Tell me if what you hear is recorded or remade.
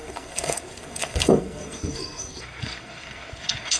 remade